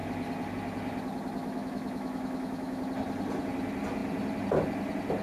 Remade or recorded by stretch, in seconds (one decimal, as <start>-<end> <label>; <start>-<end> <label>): 0.0-1.4 recorded; 1.4-2.8 remade; 2.8-5.2 recorded